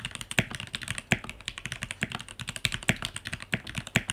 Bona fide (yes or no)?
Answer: yes